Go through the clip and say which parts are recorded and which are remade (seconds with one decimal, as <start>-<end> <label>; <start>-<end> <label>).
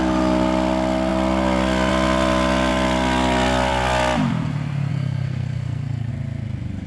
0.0-4.9 recorded; 4.9-6.1 remade; 6.1-6.9 recorded